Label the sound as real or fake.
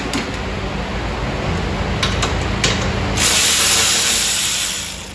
real